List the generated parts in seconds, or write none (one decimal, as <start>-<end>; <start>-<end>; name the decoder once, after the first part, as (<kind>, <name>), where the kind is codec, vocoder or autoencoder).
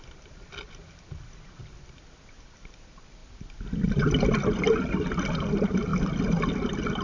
none